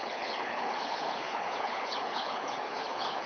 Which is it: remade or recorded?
remade